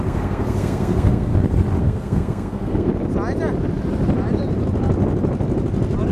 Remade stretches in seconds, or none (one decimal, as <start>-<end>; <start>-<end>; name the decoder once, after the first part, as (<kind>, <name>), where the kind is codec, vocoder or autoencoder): 0.0-1.3 (codec, SNAC); 1.8-2.9